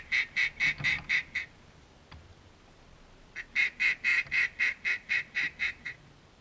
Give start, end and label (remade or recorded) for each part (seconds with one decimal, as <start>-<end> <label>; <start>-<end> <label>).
0.0-4.1 recorded; 4.1-6.4 remade